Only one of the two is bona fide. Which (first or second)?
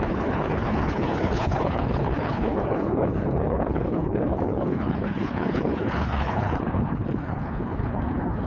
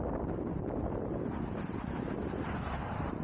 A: second